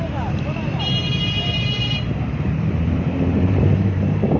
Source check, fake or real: fake